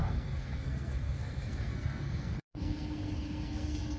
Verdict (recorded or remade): remade